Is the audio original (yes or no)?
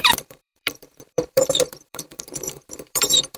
no